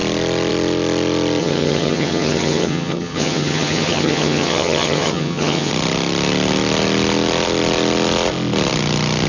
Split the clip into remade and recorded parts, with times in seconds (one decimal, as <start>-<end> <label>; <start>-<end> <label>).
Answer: 0.0-1.4 recorded; 1.4-5.7 remade; 5.7-9.3 recorded